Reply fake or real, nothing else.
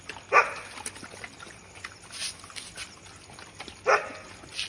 real